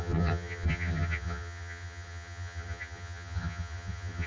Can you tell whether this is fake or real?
fake